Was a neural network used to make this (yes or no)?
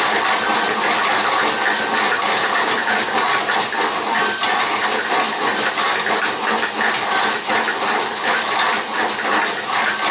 no